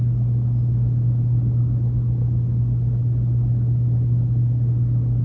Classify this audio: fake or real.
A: real